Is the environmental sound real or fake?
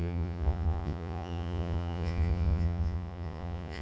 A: fake